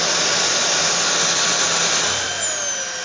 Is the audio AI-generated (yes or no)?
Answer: no